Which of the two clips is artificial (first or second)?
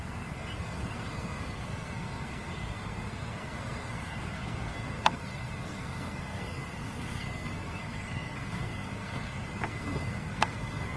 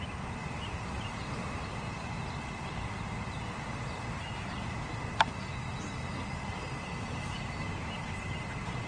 first